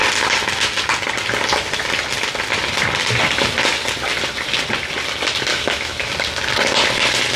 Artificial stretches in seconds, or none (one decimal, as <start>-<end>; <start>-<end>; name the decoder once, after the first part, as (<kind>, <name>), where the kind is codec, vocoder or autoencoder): 5.5-6.1 (autoencoder, DAC-VAE)